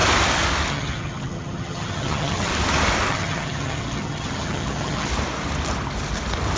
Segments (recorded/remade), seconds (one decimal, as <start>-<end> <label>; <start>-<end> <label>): 0.0-0.7 recorded; 0.7-2.5 remade; 2.5-3.1 recorded; 3.1-5.1 remade; 5.1-6.6 recorded